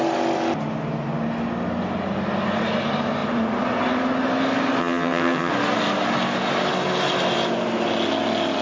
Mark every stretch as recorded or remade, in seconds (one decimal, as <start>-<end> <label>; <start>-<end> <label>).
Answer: 0.0-4.8 recorded; 4.8-5.5 remade; 5.5-8.6 recorded